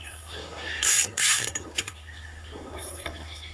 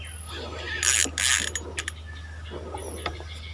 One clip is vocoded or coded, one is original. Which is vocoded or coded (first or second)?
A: first